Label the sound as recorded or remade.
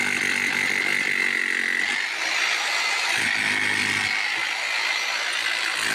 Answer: recorded